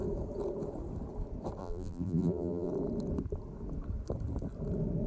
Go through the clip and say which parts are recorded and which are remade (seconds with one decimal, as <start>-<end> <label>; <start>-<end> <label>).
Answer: 0.0-1.6 recorded; 1.6-2.7 remade; 2.7-5.1 recorded